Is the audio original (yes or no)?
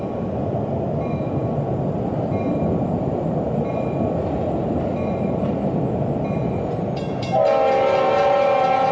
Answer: yes